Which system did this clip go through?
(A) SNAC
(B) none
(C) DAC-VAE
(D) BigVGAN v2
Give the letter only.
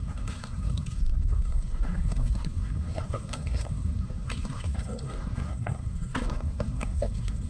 A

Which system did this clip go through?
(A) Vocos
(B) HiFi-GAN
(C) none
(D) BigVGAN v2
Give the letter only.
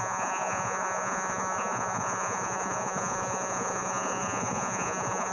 A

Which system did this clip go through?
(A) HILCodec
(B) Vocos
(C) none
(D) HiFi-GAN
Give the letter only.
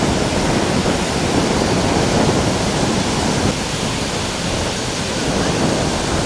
C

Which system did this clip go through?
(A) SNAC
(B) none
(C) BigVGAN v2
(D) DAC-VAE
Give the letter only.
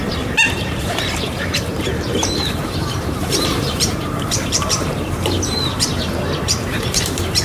C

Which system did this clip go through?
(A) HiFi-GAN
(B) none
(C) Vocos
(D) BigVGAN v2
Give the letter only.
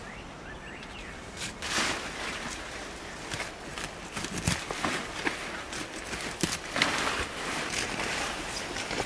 B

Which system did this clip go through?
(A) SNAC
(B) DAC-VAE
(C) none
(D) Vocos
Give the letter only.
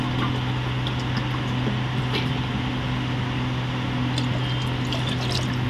C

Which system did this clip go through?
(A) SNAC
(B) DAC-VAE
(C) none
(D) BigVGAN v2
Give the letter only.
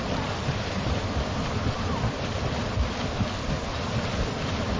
D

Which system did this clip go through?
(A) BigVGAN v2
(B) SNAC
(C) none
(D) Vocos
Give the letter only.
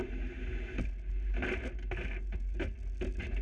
C